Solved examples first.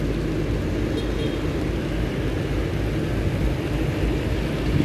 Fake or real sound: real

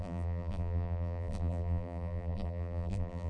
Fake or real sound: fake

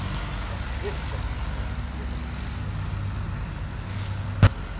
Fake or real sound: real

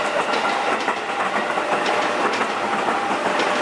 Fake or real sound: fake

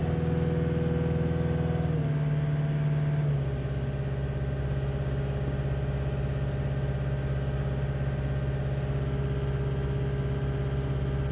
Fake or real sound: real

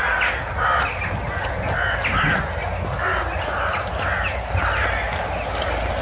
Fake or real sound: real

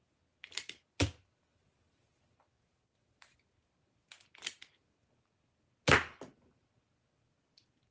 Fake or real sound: real